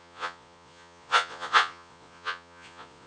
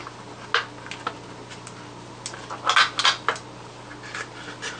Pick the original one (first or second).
second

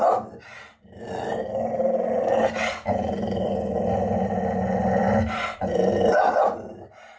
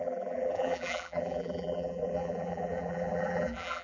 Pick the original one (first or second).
first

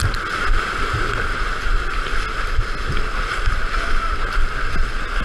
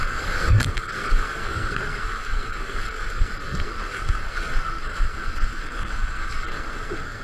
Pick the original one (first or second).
first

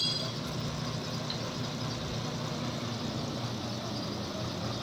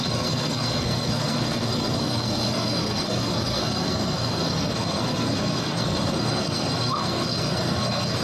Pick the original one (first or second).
first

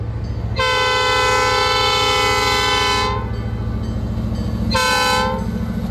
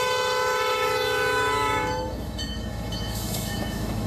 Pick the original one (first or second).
first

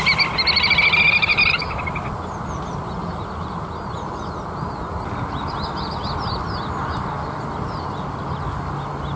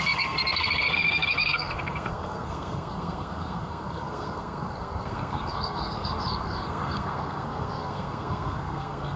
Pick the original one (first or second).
first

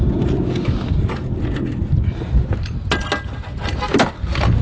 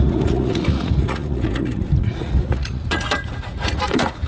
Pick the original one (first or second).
first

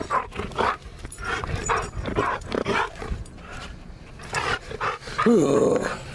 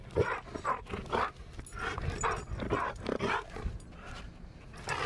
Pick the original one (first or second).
second